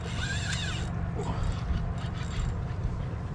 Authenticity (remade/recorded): recorded